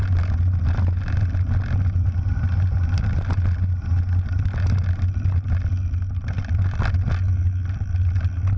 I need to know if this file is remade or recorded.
recorded